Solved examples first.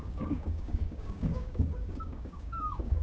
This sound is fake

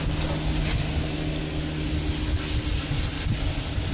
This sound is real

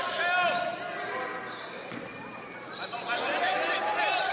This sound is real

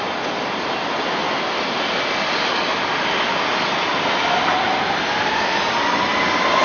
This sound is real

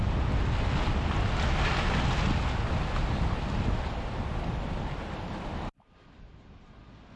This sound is real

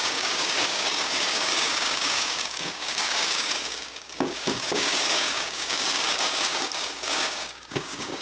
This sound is fake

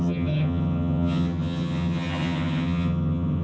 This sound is fake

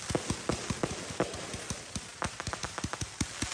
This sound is real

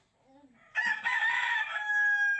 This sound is real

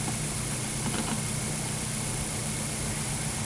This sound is real